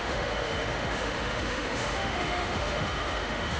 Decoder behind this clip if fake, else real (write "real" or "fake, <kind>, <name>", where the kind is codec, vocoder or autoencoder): fake, autoencoder, DAC-VAE